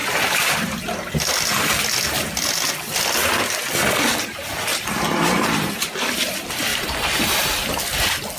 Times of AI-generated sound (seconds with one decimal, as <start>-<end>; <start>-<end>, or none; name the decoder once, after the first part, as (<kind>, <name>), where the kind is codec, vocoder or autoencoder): 0.0-1.3 (vocoder, BigVGAN v2); 4.7-5.9; 6.7-7.3